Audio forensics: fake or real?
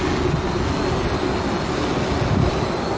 real